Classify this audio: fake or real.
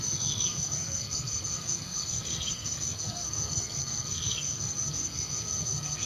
fake